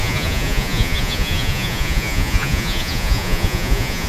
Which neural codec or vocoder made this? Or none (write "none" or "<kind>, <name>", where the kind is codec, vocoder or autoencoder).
vocoder, Vocos